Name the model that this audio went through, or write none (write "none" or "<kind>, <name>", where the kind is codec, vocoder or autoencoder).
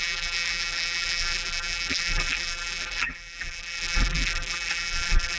vocoder, BigVGAN v2